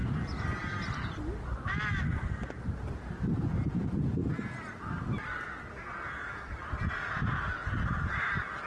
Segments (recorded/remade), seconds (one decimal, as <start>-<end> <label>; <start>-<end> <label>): 0.0-8.7 recorded